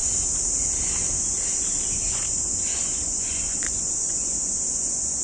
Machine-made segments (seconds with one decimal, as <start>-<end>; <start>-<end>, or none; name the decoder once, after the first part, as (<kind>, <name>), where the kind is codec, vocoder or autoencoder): 2.0-5.2 (vocoder, Vocos)